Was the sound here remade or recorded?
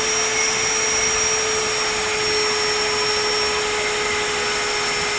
recorded